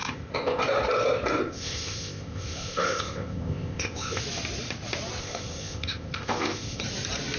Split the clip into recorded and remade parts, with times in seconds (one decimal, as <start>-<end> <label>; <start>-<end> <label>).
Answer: 0.0-0.6 remade; 0.6-1.4 recorded; 1.4-4.2 remade; 4.2-5.2 recorded; 5.2-6.8 remade; 6.8-7.4 recorded